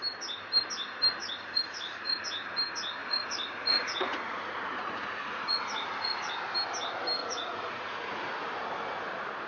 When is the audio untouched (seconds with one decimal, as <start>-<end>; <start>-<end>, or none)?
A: 0.0-1.2; 2.2-3.0; 6.3-7.2; 8.2-9.5